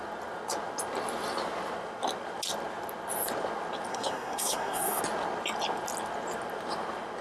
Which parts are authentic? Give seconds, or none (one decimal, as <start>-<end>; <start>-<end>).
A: 0.0-3.9; 5.0-7.2

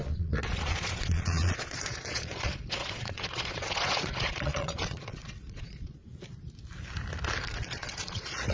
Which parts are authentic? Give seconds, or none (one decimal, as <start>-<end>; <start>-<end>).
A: 6.0-7.5

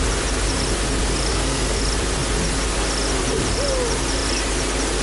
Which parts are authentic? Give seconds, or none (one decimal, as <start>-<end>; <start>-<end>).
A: 0.0-1.3; 1.8-5.0

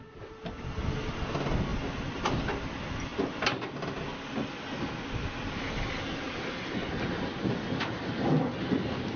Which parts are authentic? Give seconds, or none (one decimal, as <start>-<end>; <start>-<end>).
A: 0.0-9.2

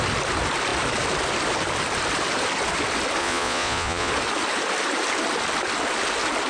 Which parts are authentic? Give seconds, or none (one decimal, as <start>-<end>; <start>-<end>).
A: 0.0-3.2; 4.1-6.5

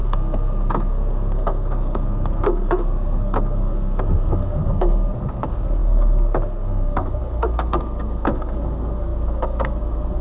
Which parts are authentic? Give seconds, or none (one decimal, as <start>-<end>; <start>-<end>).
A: none

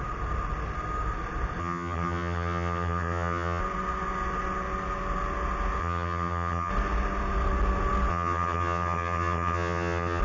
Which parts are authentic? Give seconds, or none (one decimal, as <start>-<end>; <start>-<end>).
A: 0.0-1.6; 3.6-5.8; 6.7-8.1